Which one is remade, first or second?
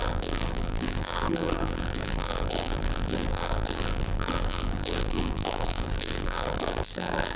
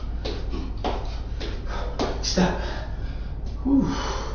first